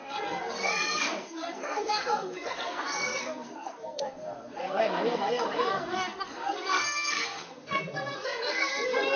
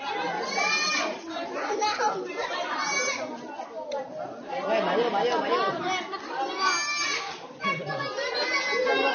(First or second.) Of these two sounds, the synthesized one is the first